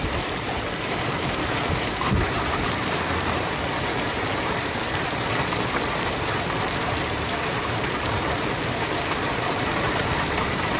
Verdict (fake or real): fake